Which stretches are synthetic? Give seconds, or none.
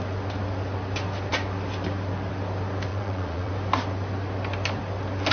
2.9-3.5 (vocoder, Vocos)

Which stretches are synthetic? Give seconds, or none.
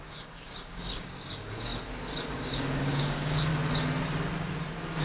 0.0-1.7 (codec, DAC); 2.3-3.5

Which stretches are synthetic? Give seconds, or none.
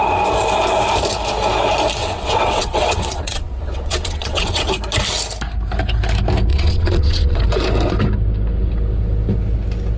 2.0-4.7 (vocoder, WaveNeXt); 6.5-7.4